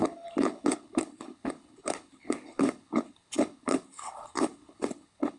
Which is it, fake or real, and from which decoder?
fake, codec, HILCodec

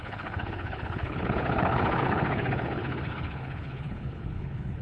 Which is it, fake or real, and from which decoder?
fake, codec, HILCodec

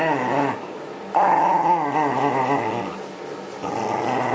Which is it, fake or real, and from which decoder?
real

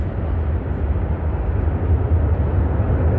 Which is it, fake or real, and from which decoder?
real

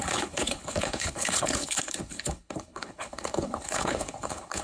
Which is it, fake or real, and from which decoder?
fake, codec, HILCodec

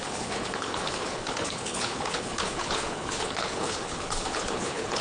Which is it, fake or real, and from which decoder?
fake, codec, HILCodec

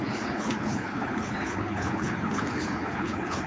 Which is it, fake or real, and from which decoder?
fake, codec, HILCodec